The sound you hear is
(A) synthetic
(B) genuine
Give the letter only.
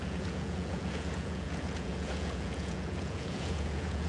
A